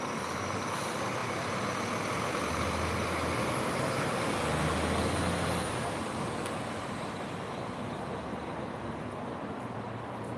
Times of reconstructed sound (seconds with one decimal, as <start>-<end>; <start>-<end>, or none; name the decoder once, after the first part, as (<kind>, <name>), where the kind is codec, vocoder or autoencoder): none